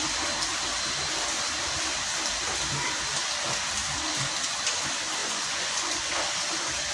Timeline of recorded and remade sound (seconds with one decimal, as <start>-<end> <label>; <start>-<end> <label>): 0.0-5.2 recorded; 5.2-6.1 remade; 6.1-6.9 recorded